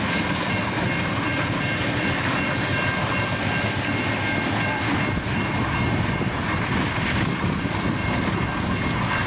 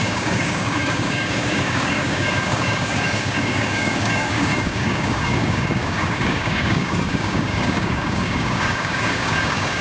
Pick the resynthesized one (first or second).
second